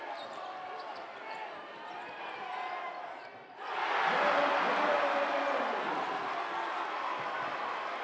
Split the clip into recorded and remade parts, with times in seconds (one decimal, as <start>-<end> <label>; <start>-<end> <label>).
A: 0.0-8.0 recorded